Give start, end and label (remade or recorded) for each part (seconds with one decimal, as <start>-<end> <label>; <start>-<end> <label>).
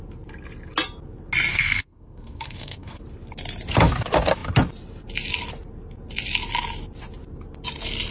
0.0-1.5 recorded; 1.5-3.0 remade; 3.0-8.1 recorded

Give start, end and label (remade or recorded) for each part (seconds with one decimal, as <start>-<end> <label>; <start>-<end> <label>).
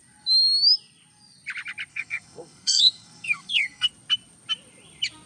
0.0-1.9 recorded; 1.9-3.9 remade; 3.9-5.3 recorded